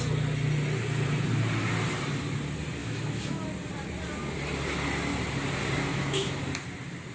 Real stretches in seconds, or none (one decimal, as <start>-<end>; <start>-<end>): 0.0-2.8; 3.4-5.9; 6.4-7.1